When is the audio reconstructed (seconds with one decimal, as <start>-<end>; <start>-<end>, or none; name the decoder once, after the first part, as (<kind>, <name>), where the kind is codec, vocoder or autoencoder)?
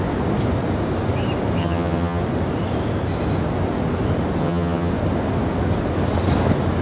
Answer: 1.6-2.2 (vocoder, HiFi-GAN); 4.4-4.9